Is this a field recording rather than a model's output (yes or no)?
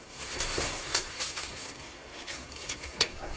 no